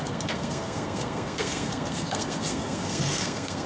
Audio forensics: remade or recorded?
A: remade